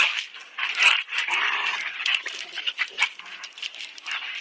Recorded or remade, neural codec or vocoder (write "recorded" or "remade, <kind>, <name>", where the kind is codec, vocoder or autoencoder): recorded